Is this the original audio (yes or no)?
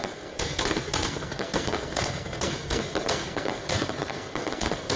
no